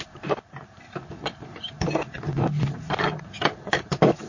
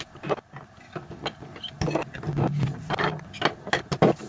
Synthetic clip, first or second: first